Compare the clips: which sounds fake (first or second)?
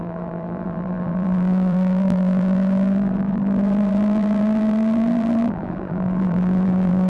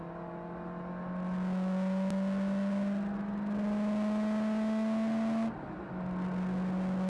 first